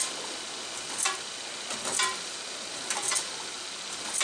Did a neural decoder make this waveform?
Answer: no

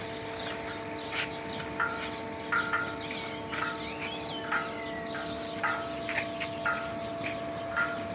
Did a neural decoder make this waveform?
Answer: no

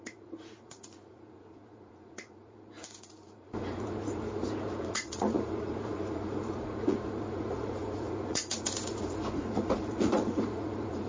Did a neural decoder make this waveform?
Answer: yes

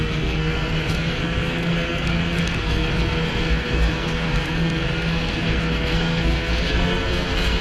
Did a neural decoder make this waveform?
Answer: yes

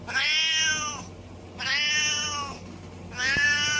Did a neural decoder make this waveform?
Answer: no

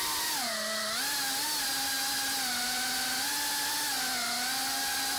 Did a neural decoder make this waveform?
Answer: no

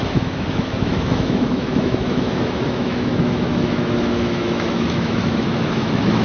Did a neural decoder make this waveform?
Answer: yes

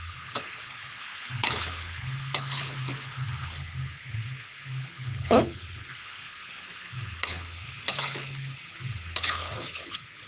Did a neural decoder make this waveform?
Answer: yes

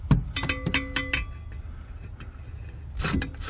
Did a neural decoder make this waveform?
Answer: no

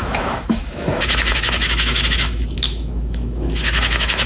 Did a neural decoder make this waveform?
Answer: yes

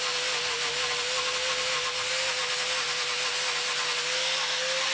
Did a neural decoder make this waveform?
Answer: no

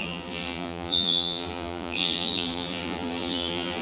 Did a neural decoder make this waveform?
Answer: yes